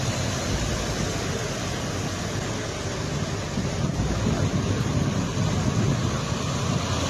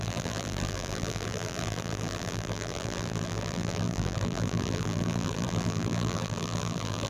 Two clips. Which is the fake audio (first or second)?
second